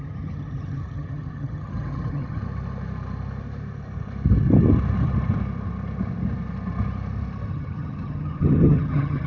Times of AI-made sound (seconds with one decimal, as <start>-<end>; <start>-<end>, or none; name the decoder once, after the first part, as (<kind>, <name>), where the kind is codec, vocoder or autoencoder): 0.0-2.4 (vocoder, HiFi-GAN); 7.5-9.3